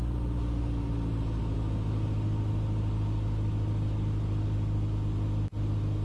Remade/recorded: recorded